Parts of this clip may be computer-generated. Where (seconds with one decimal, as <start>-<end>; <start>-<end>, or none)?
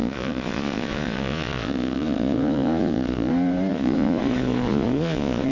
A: 0.0-3.3; 3.7-5.5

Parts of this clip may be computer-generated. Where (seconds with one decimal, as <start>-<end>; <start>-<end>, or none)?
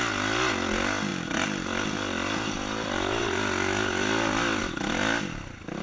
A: none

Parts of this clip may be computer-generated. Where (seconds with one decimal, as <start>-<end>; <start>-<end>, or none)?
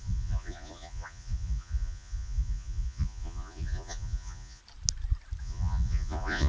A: 0.0-4.6; 5.4-6.5